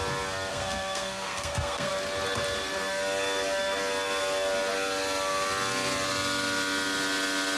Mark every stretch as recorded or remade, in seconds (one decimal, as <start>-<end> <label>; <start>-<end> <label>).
0.0-0.5 recorded; 0.5-1.9 remade; 1.9-7.6 recorded